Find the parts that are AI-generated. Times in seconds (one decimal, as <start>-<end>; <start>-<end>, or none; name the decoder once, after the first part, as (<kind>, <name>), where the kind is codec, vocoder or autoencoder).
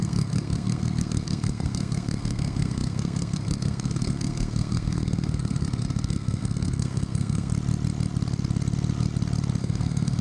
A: 0.0-7.5 (codec, SNAC); 9.6-10.2